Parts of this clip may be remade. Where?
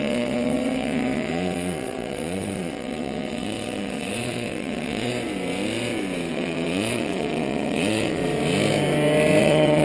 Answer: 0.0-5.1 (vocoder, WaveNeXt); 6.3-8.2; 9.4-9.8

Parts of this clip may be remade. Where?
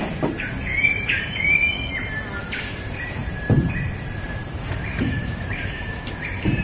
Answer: 0.9-1.6 (vocoder, BigVGAN v2); 2.4-6.6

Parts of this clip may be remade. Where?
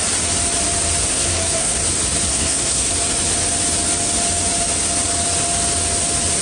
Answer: 1.1-1.8 (codec, SNAC); 2.3-2.9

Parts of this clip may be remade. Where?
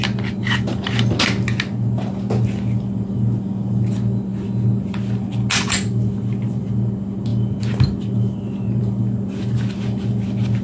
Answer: none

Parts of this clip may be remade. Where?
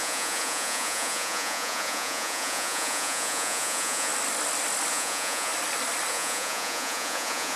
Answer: 0.0-4.1 (vocoder, Vocos); 4.9-5.5; 6.1-7.6